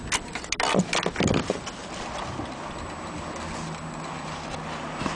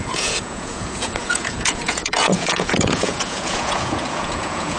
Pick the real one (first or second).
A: first